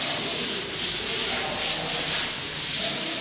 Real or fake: real